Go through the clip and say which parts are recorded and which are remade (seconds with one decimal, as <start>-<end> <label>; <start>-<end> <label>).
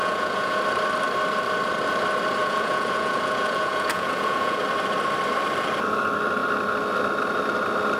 0.0-0.6 remade; 0.6-2.4 recorded; 2.4-4.6 remade; 4.6-8.0 recorded